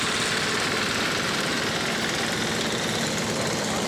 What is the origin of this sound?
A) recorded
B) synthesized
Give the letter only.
A